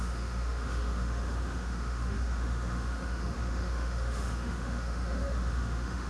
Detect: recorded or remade remade